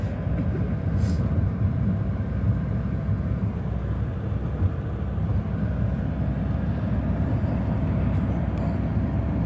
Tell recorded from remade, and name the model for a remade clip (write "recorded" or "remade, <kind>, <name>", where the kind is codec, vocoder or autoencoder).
recorded